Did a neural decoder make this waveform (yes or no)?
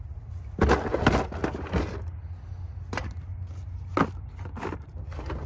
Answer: no